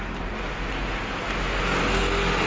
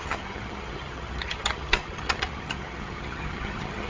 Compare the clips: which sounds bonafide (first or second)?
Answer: first